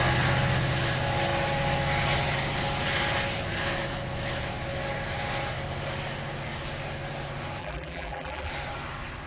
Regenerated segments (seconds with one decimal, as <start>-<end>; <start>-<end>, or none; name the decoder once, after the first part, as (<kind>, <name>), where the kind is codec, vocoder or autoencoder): 7.6-8.5 (vocoder, BigVGAN v2)